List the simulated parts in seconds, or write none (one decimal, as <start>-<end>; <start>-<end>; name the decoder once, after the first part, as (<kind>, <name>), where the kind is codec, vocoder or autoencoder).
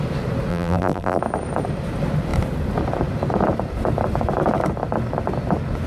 0.5-1.2 (vocoder, BigVGAN v2)